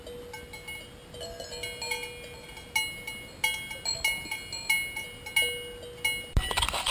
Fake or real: real